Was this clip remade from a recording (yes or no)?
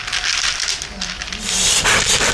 no